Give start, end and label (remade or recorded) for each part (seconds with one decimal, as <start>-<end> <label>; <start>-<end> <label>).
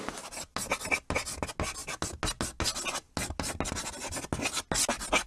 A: 0.0-5.3 recorded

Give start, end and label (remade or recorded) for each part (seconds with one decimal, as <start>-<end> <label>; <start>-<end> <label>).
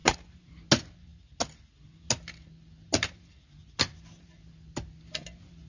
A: 0.0-5.7 recorded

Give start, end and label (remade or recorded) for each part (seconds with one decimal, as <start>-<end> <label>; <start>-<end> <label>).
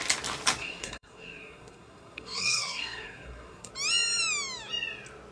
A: 0.0-0.6 recorded; 0.6-3.7 remade; 3.7-5.3 recorded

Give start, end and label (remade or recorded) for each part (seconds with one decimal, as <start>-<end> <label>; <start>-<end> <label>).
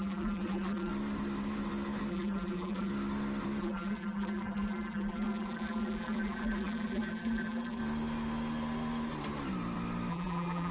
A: 0.0-0.9 remade; 0.9-2.1 recorded; 2.1-2.9 remade; 2.9-3.6 recorded; 3.6-7.8 remade; 7.8-10.1 recorded; 10.1-10.7 remade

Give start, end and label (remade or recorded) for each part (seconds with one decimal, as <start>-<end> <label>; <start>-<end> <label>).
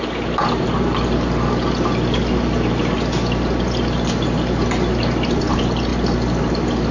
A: 0.0-6.9 recorded